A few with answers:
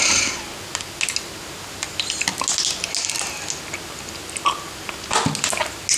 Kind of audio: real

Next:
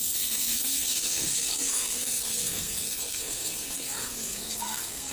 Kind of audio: fake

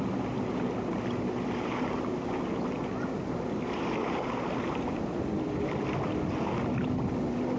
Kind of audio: real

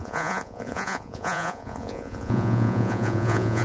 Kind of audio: fake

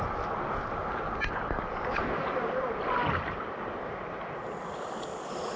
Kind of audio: real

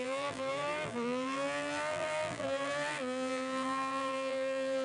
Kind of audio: fake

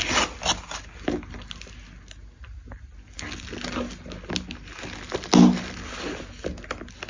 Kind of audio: real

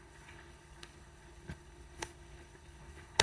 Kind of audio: fake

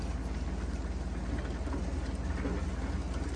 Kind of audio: real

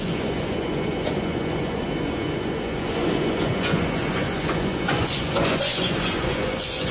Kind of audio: fake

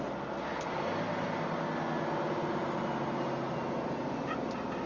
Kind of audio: real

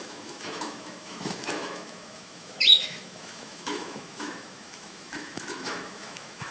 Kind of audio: fake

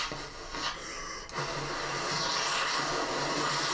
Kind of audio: real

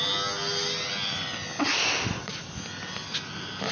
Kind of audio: real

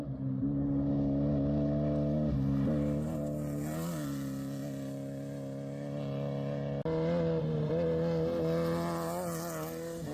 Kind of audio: real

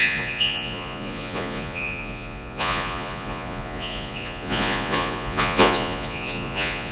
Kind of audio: fake